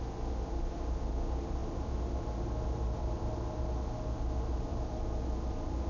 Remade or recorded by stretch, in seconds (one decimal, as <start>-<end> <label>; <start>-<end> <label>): 0.0-5.9 recorded